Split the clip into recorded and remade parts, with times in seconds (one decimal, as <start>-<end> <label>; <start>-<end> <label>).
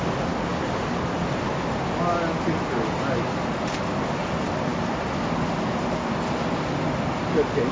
0.0-0.5 recorded; 0.5-1.7 remade; 1.7-7.7 recorded